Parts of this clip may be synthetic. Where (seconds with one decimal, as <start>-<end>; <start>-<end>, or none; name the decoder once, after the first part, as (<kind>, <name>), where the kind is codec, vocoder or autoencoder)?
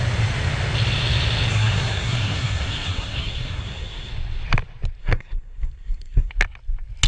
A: 1.5-4.1 (codec, SNAC); 5.0-6.3